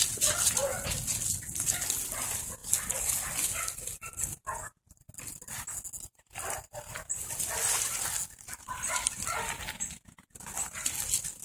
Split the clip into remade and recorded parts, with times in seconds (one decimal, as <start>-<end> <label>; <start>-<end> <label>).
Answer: 0.0-11.4 recorded